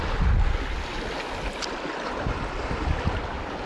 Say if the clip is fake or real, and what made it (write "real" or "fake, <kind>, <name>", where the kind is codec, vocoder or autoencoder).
real